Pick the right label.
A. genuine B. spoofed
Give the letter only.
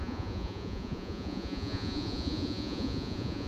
B